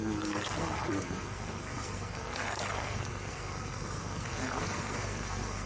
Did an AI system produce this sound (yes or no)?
yes